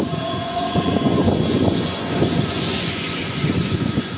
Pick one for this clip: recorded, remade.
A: remade